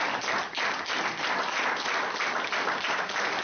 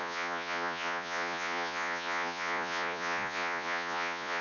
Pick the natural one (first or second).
first